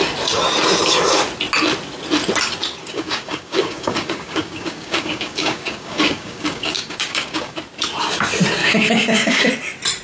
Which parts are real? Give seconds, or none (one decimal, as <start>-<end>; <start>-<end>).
0.0-2.8; 7.6-8.6; 9.5-10.0